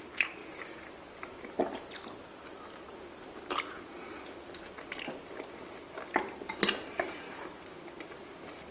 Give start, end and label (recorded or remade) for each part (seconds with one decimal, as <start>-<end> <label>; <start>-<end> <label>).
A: 0.0-8.7 recorded